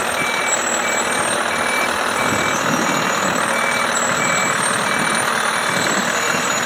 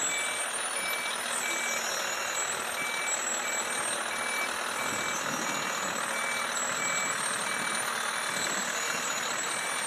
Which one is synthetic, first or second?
first